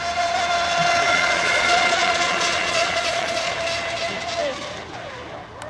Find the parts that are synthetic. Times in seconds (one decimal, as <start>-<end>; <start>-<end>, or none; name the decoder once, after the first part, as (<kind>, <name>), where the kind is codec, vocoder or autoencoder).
1.1-3.5 (vocoder, Vocos)